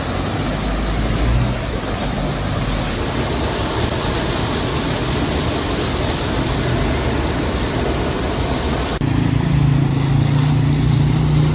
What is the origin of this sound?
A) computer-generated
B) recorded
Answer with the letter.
B